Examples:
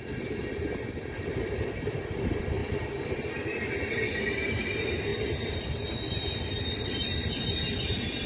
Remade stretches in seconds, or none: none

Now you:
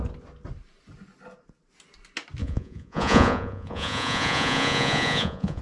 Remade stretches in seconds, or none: 2.4-5.6 (vocoder, Vocos)

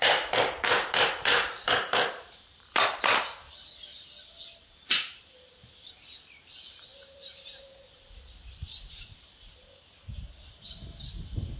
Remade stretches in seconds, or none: 0.0-2.7 (vocoder, BigVGAN v2); 4.6-11.6

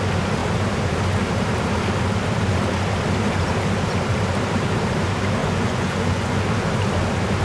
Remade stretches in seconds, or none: 5.4-6.4 (vocoder, Vocos)

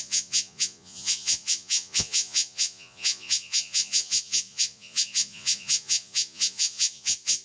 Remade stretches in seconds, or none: 0.0-7.4 (vocoder, Vocos)